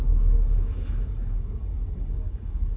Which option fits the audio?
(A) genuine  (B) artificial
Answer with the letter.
B